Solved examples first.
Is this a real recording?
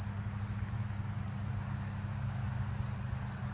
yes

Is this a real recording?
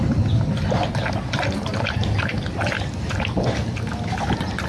yes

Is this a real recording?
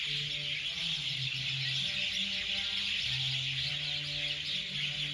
yes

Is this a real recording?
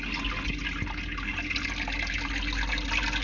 yes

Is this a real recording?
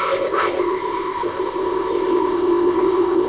no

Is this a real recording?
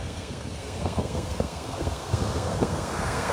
no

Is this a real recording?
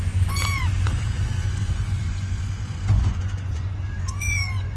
no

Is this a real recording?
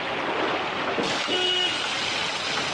yes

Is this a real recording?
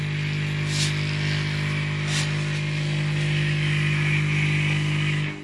yes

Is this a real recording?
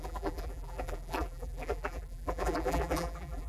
no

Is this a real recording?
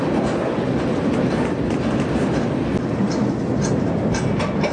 yes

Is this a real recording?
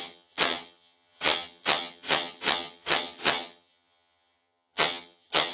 no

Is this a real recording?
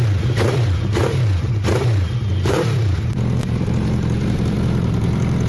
no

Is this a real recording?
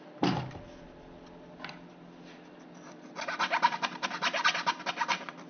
yes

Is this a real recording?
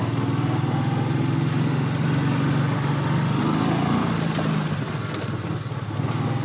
yes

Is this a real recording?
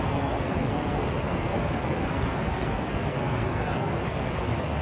no